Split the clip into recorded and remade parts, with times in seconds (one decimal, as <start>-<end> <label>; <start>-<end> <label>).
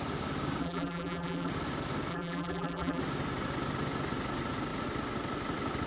0.0-0.6 recorded; 0.6-1.5 remade; 1.5-2.1 recorded; 2.1-3.0 remade; 3.0-5.9 recorded